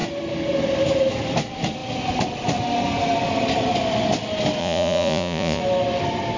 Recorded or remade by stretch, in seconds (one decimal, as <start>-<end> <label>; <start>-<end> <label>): 0.0-4.6 recorded; 4.6-5.6 remade; 5.6-6.4 recorded